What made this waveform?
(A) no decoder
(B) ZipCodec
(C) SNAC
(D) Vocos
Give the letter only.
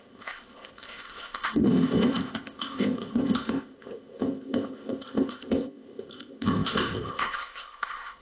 B